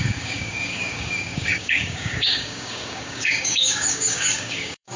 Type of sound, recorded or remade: remade